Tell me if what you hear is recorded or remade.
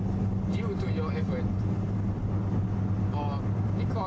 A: recorded